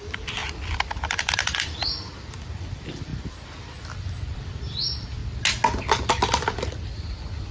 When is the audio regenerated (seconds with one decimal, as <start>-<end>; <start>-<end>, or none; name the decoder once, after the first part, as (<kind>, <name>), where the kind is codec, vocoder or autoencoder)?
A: 0.0-0.4 (vocoder, BigVGAN v2); 1.0-3.1; 3.8-5.2; 5.8-7.5